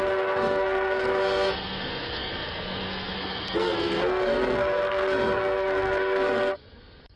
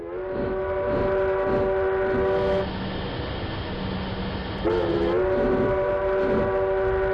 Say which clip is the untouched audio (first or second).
second